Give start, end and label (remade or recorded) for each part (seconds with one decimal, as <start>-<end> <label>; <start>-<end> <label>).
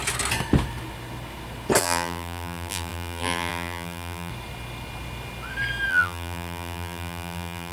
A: 0.0-1.8 recorded; 1.8-4.3 remade; 4.3-5.9 recorded; 5.9-7.7 remade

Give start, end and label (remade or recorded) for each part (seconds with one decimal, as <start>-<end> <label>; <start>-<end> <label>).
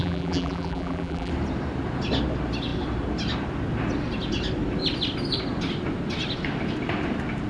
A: 0.0-1.3 remade; 1.3-7.5 recorded